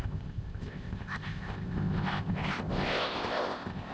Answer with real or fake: fake